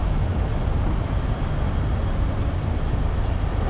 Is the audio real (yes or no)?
yes